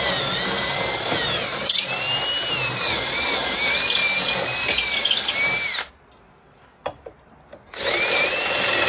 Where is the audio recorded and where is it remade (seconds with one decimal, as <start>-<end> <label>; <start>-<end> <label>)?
0.0-8.9 recorded